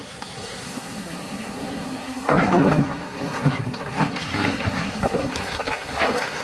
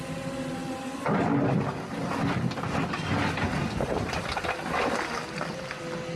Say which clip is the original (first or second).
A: second